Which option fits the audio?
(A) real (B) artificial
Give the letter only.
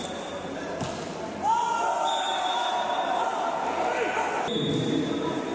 A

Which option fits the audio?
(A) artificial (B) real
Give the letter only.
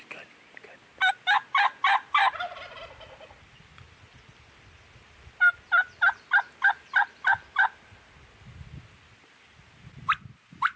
B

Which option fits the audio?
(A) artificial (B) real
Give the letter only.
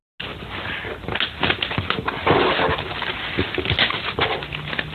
B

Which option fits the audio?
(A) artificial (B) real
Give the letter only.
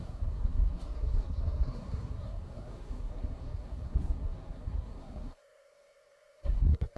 A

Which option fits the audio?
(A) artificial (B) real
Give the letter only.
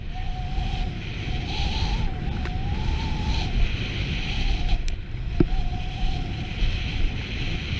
B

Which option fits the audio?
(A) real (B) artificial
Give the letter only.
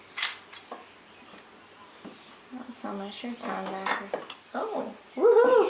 A